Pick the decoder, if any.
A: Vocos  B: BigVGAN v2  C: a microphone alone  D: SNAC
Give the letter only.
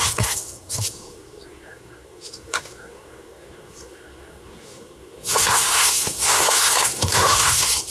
D